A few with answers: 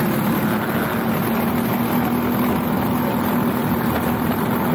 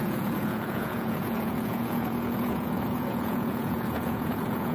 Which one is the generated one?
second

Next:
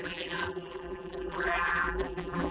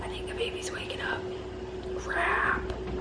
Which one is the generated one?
first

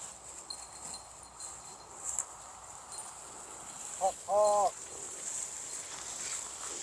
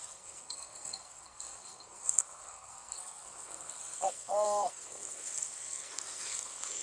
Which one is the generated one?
second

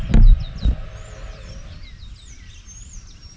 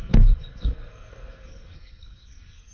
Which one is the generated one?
second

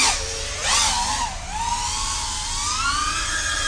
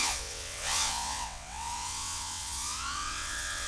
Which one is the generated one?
second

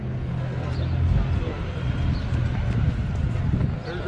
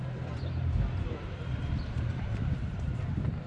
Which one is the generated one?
second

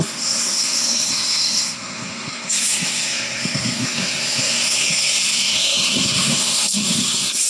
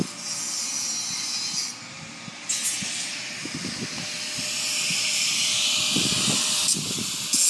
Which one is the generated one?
first